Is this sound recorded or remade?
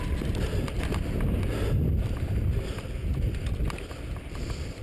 recorded